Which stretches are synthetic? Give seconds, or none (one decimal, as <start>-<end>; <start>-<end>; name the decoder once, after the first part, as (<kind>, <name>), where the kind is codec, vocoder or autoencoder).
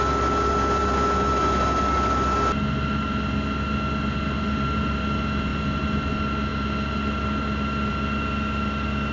none